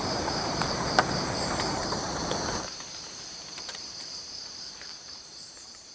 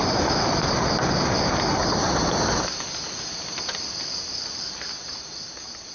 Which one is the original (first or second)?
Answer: second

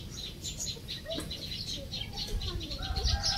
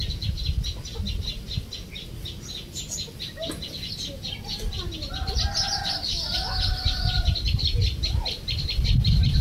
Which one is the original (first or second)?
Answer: second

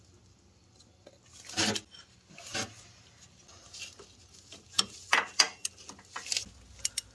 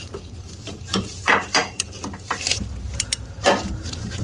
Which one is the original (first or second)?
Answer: first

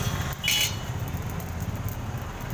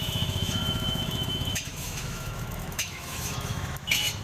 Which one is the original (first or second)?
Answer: first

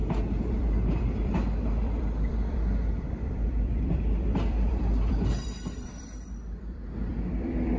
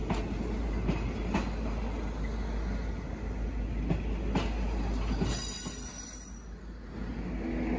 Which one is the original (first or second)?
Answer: second